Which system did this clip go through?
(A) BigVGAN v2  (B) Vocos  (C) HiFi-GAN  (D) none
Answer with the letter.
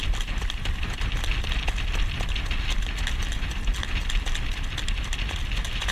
D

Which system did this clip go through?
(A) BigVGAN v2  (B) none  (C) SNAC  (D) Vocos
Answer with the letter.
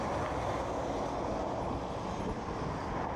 B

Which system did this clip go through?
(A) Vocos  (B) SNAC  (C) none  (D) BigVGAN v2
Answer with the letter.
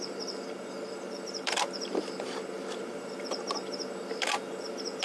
C